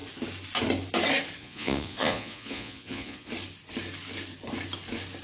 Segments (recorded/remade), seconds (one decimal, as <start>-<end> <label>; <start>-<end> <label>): 0.0-1.4 recorded; 1.4-3.3 remade; 3.3-5.2 recorded